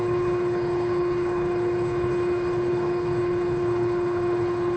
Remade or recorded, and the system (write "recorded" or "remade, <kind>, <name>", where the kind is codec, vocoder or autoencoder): remade, codec, HILCodec